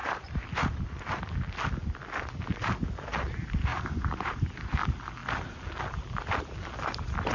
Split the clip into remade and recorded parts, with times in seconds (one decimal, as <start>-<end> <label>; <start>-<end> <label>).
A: 0.0-0.8 remade; 0.8-3.7 recorded; 3.7-4.8 remade; 4.8-7.3 recorded